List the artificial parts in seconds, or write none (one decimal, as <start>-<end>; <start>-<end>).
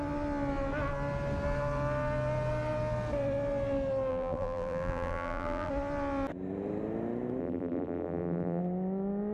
4.1-5.7; 7.4-8.6